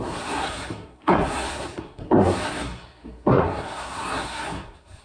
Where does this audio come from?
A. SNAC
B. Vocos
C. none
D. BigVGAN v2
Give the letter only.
A